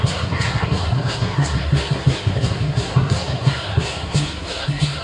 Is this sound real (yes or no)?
no